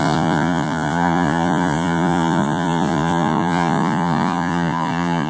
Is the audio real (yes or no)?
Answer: no